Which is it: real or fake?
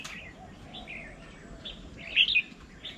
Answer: real